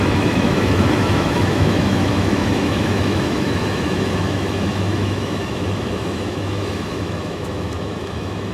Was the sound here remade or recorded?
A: remade